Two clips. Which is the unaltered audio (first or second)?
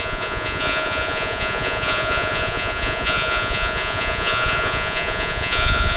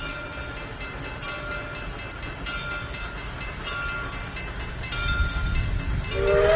second